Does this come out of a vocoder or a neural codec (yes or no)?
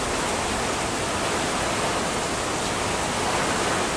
no